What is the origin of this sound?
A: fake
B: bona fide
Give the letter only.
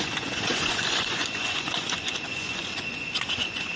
A